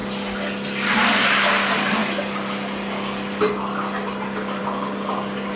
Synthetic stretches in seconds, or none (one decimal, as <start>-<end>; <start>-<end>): none

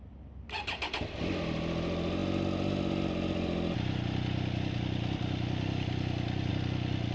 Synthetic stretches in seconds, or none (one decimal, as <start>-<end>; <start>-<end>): none